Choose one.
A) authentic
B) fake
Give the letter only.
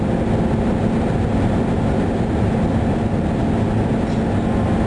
A